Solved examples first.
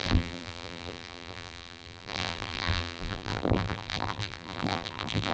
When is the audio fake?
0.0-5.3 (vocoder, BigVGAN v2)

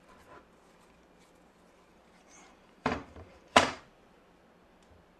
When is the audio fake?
1.9-3.8 (vocoder, BigVGAN v2)